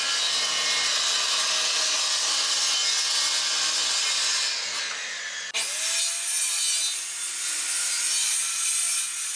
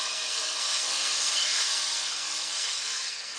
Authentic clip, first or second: first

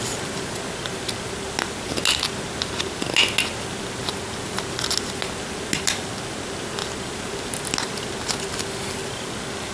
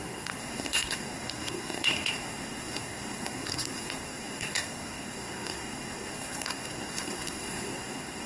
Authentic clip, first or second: first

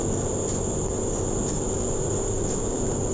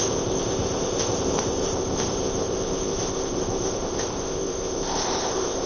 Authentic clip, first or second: first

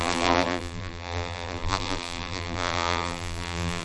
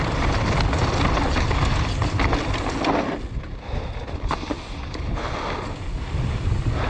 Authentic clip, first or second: second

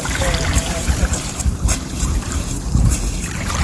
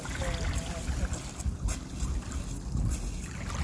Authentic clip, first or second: second